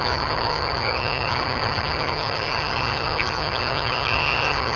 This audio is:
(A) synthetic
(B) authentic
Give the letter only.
A